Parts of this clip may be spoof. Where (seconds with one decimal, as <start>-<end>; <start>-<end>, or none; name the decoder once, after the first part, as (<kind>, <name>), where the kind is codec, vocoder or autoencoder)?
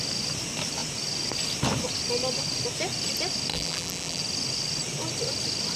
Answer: 3.5-4.2 (vocoder, BigVGAN v2)